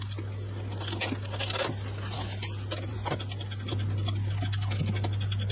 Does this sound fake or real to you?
real